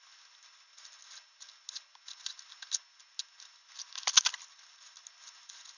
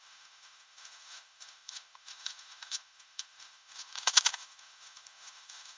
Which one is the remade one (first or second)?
second